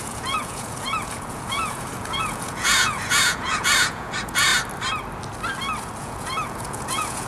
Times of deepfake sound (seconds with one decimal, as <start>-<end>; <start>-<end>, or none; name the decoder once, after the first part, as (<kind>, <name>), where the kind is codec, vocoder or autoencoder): 0.0-4.5 (vocoder, Vocos); 6.0-7.3